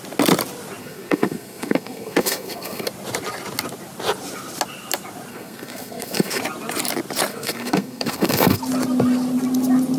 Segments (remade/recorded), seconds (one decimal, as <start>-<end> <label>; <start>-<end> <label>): 0.0-0.8 recorded; 0.8-2.9 remade; 2.9-5.3 recorded; 5.3-6.4 remade; 6.4-7.3 recorded; 7.3-8.6 remade; 8.6-10.0 recorded